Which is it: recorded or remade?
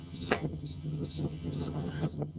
remade